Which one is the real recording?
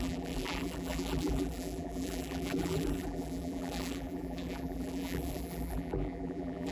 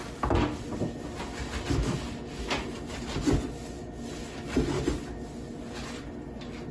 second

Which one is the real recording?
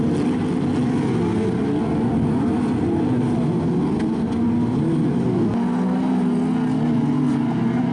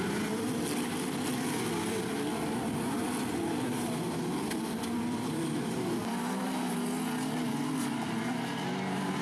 first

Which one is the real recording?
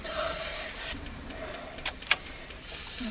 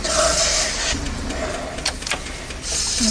second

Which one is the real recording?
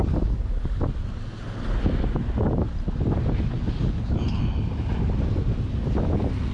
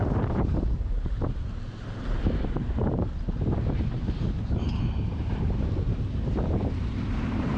first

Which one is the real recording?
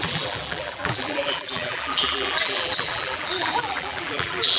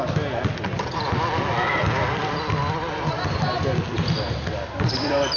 second